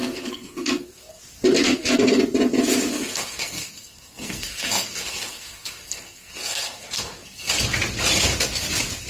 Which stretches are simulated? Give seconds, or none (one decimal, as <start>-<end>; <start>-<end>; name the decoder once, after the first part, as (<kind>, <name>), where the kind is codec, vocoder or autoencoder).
0.0-1.2 (codec, SNAC); 1.6-2.2; 2.9-7.5